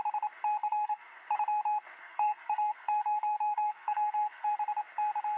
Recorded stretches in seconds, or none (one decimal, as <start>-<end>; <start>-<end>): 0.0-0.6; 1.2-2.0; 4.5-5.4